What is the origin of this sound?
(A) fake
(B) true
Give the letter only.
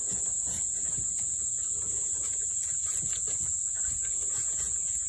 A